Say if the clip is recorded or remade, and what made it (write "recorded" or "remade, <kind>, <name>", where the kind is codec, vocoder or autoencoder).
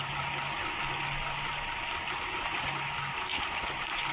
recorded